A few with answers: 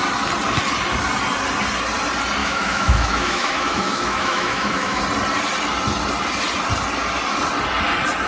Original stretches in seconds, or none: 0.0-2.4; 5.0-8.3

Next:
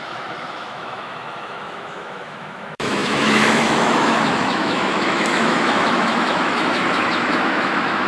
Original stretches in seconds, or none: none

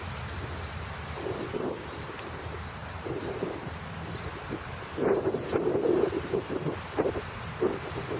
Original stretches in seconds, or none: 0.0-2.8; 3.8-8.2

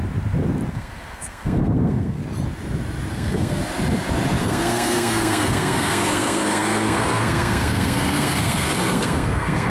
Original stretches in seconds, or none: 0.0-0.7; 2.2-3.1; 3.6-4.4